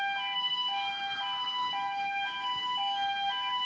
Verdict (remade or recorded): remade